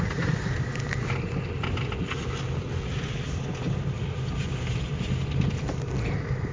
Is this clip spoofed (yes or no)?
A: no